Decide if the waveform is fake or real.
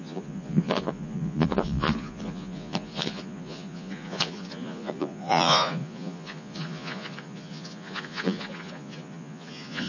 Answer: fake